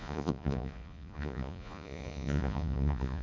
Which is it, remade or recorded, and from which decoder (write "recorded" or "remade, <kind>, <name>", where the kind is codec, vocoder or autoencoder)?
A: remade, vocoder, Vocos